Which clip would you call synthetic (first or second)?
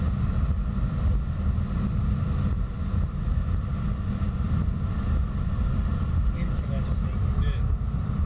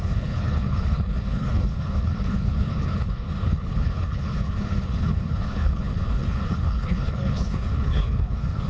second